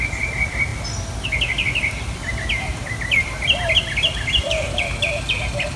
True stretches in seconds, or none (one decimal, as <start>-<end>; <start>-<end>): 0.0-5.8